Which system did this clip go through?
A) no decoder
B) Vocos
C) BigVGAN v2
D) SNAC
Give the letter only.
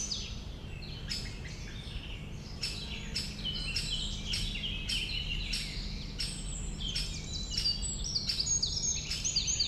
A